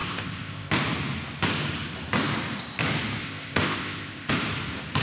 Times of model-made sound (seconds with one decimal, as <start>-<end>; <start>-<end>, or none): 0.0-0.7; 3.2-4.3